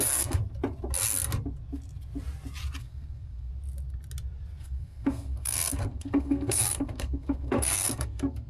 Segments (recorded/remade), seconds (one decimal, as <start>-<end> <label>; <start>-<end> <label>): 0.0-0.4 remade; 0.4-2.8 recorded; 2.8-3.5 remade; 3.5-4.6 recorded; 4.6-8.5 remade